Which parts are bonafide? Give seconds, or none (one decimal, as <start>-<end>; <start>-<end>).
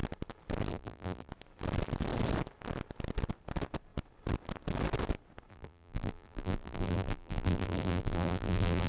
0.0-0.7; 1.3-5.5